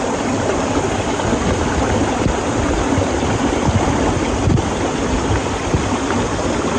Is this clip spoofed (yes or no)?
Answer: no